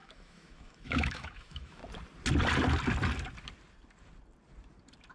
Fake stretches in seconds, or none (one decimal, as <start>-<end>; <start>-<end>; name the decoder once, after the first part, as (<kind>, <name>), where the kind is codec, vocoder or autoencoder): 0.0-1.8 (autoencoder, DAC-VAE)